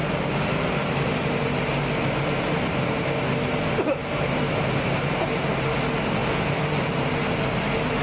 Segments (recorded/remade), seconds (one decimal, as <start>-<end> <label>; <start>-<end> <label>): 0.0-8.0 recorded